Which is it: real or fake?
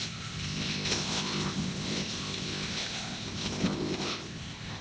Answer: fake